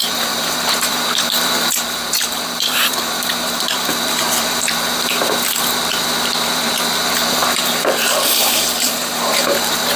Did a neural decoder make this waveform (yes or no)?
yes